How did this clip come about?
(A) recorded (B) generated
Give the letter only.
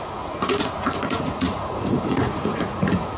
B